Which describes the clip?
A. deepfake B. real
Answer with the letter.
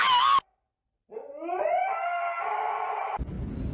B